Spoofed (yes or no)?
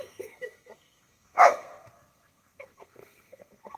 yes